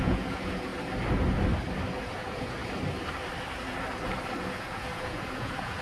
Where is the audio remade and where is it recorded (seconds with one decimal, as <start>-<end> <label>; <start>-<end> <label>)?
0.0-0.7 remade; 0.7-2.0 recorded; 2.0-2.6 remade; 2.6-4.4 recorded; 4.4-5.8 remade